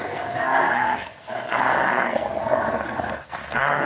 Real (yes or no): no